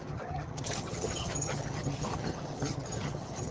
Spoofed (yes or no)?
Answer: yes